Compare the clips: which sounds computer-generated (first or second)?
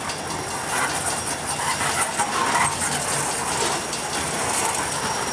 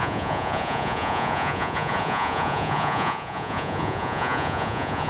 second